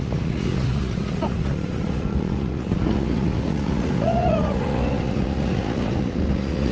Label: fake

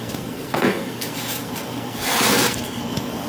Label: fake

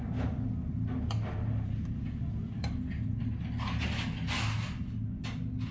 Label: real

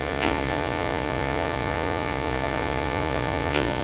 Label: fake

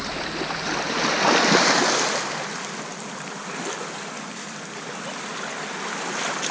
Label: real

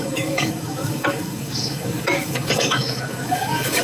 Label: fake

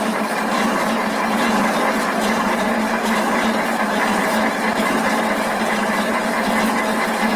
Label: fake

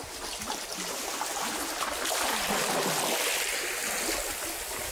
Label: real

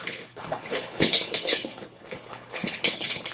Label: fake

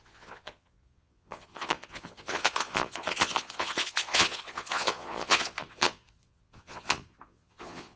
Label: fake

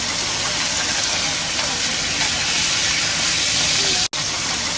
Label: real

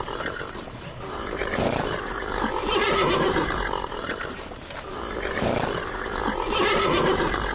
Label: fake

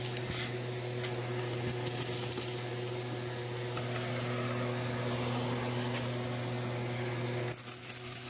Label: real